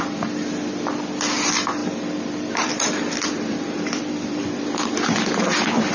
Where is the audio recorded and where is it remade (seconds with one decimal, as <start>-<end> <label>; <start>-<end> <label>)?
0.0-1.8 recorded; 1.8-4.9 remade; 4.9-5.9 recorded